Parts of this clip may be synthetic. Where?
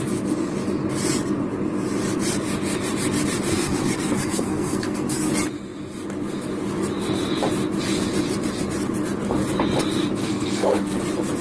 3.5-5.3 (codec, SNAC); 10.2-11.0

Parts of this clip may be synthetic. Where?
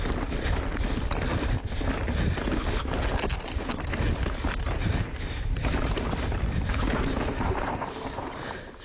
none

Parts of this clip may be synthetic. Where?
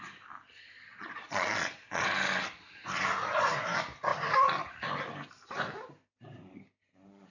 0.9-2.0 (vocoder, Vocos)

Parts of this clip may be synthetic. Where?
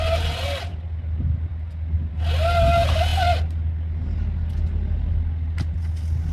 none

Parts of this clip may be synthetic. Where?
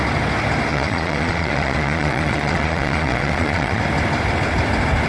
0.7-3.8 (vocoder, Vocos)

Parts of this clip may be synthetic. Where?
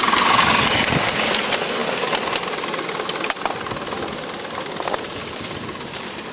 none